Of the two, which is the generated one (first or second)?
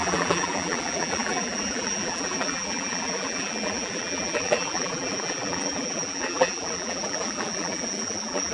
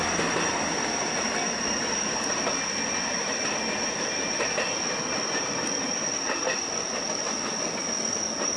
first